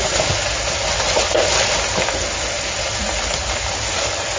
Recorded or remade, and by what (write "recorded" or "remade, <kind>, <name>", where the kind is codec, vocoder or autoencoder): recorded